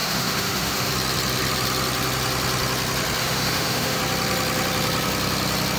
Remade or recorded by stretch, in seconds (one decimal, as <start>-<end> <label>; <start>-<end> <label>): 0.0-0.9 remade; 0.9-3.2 recorded; 3.2-4.0 remade; 4.0-5.8 recorded